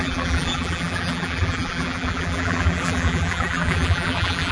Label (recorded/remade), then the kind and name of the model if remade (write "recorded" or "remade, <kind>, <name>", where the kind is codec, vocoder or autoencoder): remade, vocoder, BigVGAN v2